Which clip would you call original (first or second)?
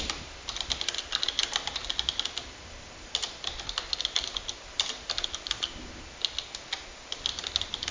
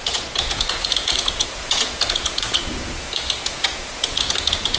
first